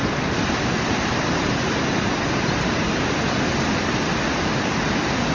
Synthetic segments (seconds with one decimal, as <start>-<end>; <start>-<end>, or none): 0.0-3.1